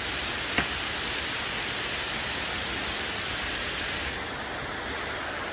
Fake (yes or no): no